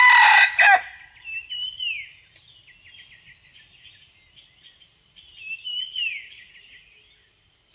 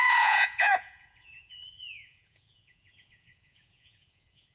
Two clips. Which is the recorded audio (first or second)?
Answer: first